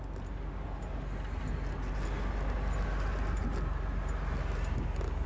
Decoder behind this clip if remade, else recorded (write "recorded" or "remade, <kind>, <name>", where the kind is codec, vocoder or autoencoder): recorded